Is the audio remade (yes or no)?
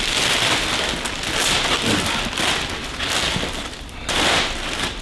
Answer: no